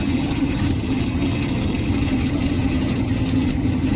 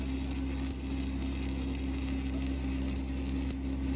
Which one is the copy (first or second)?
first